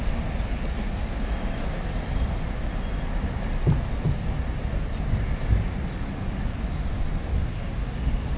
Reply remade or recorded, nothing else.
recorded